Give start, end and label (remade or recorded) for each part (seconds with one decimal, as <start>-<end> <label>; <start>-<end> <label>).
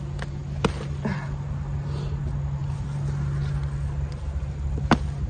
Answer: 0.0-5.3 recorded